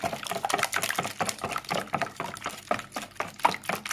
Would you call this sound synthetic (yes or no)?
no